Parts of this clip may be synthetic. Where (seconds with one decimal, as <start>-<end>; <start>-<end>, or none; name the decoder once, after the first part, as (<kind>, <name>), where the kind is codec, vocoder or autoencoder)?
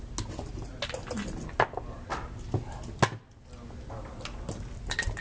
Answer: none